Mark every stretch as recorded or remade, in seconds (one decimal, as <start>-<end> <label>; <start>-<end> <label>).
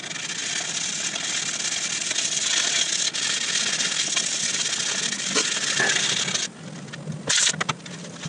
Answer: 0.0-8.3 recorded